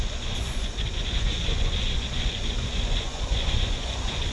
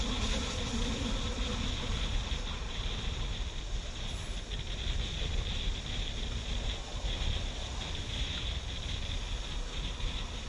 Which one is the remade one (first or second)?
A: first